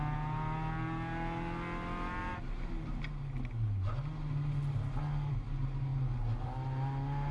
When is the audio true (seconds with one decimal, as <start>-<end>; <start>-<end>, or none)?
0.0-7.3